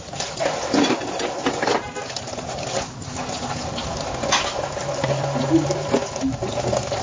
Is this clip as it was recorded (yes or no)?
yes